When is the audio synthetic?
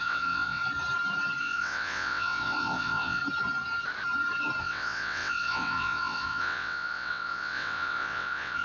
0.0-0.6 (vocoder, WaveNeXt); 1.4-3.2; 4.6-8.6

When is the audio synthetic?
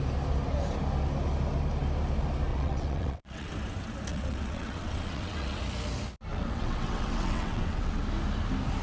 2.5-3.5 (vocoder, WaveNeXt); 4.1-5.6; 6.3-8.0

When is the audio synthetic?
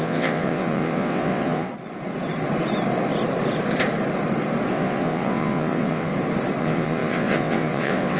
0.0-1.7 (vocoder, WaveNeXt); 4.7-6.1; 6.6-8.2